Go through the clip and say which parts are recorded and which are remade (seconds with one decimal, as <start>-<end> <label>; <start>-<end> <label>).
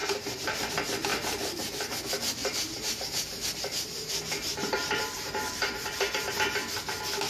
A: 0.0-0.7 remade; 0.7-1.1 recorded; 1.1-2.0 remade; 2.0-2.4 recorded; 2.4-6.8 remade; 6.8-7.3 recorded